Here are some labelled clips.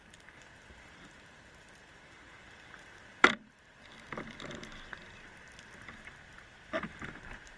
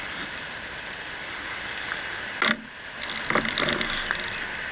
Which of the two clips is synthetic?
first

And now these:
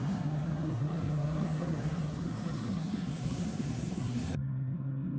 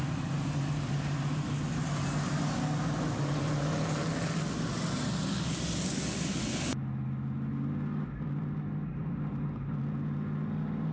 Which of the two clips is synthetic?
first